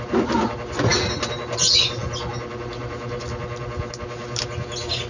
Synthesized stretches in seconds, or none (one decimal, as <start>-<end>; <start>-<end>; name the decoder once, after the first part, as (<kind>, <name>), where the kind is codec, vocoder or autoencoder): none